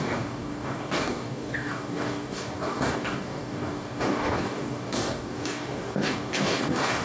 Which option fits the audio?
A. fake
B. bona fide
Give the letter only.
A